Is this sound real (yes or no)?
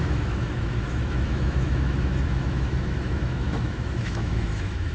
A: no